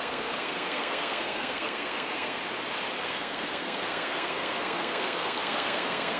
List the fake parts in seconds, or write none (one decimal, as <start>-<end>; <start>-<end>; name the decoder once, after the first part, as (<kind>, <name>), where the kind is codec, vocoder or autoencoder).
0.0-2.4 (codec, SNAC); 3.0-6.2